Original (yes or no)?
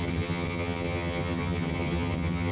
no